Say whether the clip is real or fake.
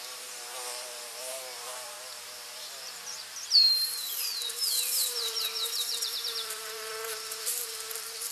fake